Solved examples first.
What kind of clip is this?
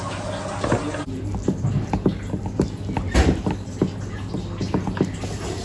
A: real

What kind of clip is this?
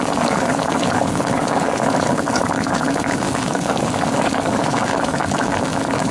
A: fake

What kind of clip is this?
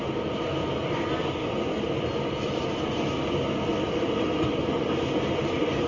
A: real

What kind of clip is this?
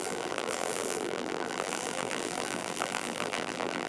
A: fake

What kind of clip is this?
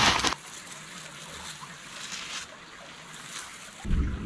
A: real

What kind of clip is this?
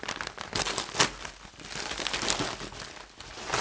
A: real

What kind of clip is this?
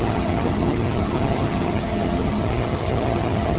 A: fake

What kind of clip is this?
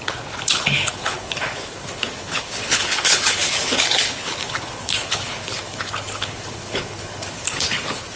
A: fake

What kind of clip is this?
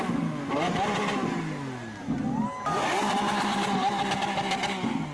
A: real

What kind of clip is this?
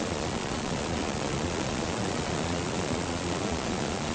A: fake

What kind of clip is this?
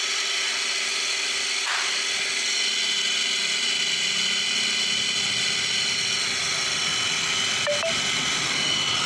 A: real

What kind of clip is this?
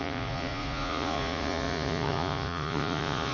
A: fake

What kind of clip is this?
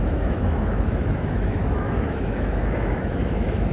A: fake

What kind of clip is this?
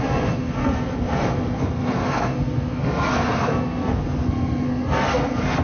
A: fake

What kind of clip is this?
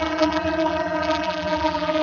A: fake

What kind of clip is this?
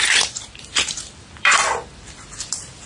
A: fake